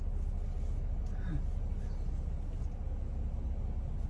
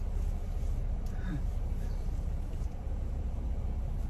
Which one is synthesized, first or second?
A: second